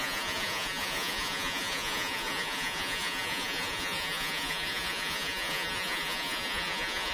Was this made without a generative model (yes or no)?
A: no